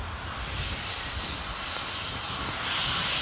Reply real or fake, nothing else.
real